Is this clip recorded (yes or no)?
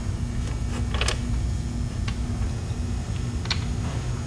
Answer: yes